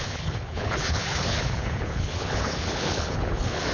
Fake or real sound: fake